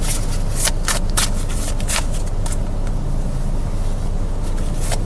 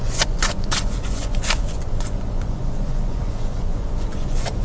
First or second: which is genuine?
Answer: first